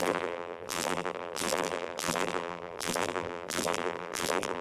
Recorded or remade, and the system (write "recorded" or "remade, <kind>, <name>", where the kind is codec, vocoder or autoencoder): remade, vocoder, BigVGAN v2